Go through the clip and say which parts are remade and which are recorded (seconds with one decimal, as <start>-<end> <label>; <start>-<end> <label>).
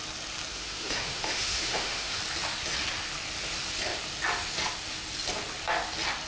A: 0.0-0.5 recorded; 0.5-2.2 remade; 2.2-6.3 recorded